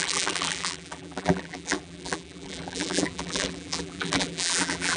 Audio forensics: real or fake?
fake